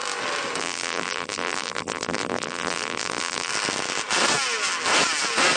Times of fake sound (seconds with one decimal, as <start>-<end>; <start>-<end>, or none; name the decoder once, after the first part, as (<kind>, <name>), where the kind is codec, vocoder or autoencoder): 0.6-3.5 (vocoder, BigVGAN v2)